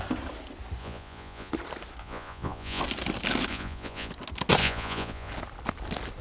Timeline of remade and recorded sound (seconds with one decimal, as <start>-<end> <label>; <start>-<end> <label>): 0.0-0.8 recorded; 0.8-1.5 remade; 1.5-2.0 recorded; 2.0-2.8 remade; 2.8-3.5 recorded; 3.5-4.1 remade; 4.1-4.6 recorded; 4.6-5.3 remade; 5.3-6.2 recorded